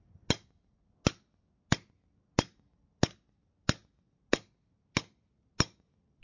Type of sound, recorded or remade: recorded